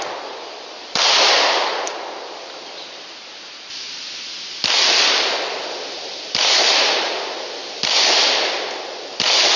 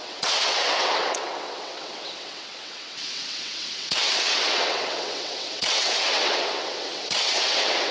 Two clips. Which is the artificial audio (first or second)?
second